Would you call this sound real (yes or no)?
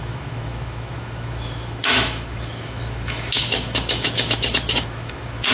no